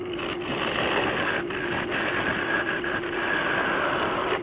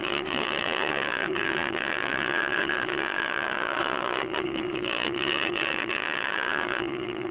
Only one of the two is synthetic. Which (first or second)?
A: second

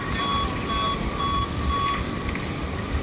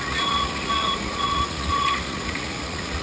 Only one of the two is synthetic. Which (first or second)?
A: second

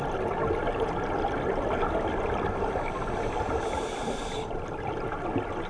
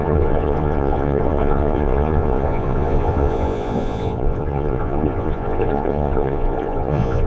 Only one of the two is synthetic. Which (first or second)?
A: second